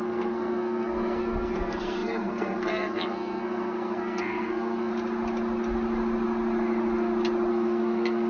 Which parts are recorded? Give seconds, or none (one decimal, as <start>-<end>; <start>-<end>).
4.9-7.5